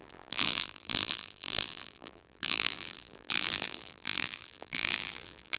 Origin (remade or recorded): remade